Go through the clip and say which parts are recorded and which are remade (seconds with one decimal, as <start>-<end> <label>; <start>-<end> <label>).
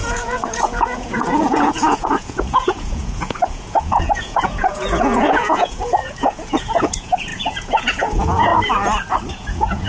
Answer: 0.0-8.5 remade; 8.5-9.3 recorded; 9.3-9.9 remade